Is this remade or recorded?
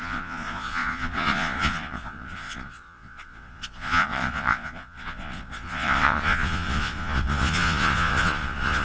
remade